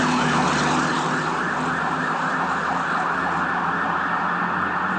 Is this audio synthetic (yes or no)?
no